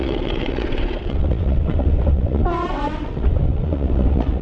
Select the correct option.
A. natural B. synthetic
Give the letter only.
B